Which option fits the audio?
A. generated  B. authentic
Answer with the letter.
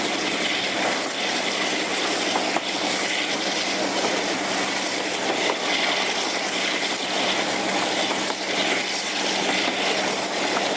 B